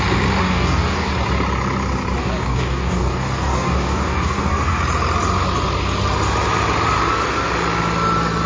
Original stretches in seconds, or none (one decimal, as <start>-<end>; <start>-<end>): 0.0-0.4; 1.1-2.2; 4.8-8.5